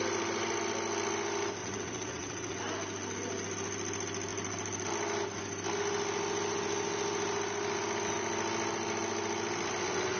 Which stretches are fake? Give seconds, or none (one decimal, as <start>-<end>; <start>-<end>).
1.6-2.6